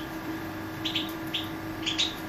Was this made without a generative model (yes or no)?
no